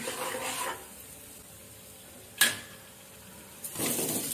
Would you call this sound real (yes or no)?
yes